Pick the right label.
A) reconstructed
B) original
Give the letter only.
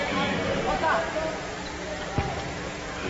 B